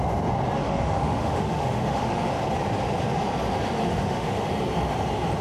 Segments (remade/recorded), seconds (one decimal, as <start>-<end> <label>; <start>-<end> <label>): 0.0-0.6 recorded; 0.6-2.3 remade; 2.3-3.8 recorded; 3.8-4.5 remade; 4.5-5.4 recorded